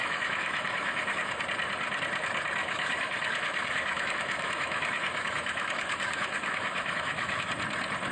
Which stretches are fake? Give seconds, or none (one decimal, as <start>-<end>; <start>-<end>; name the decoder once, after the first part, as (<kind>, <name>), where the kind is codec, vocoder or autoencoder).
0.0-1.4 (autoencoder, DAC-VAE); 2.6-7.5